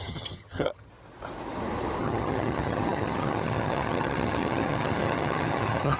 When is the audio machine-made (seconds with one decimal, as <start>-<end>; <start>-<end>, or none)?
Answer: 0.0-0.9; 2.0-6.0